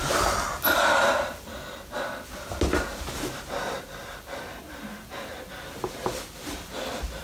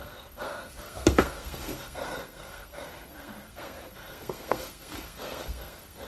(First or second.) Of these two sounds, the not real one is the second